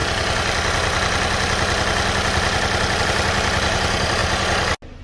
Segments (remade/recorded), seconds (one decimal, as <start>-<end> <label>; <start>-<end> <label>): 0.0-3.0 recorded; 3.0-4.2 remade; 4.2-5.0 recorded